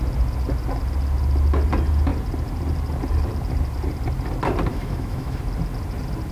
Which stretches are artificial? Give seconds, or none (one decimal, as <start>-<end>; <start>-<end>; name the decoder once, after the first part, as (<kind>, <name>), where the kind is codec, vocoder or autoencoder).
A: 4.7-5.4 (autoencoder, DAC-VAE)